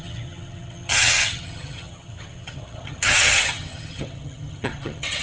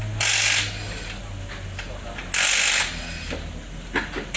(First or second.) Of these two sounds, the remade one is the first